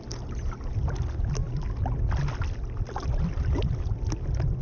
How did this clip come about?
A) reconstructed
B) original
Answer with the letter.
B